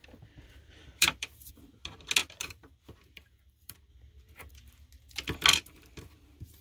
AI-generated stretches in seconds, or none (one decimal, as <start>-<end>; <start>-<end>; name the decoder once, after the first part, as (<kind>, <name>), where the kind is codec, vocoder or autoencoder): 0.0-1.5 (vocoder, BigVGAN v2); 2.2-3.9